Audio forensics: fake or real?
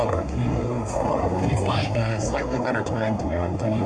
fake